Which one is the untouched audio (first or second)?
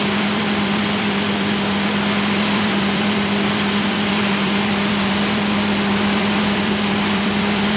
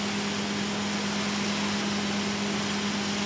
second